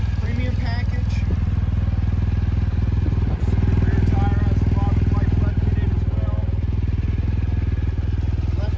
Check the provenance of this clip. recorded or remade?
recorded